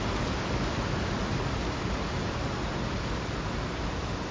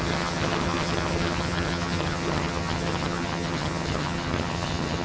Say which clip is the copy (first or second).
second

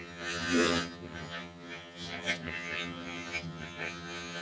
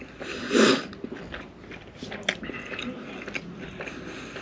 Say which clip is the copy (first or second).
first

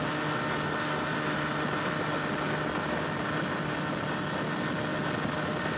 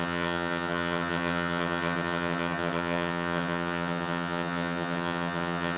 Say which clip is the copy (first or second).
second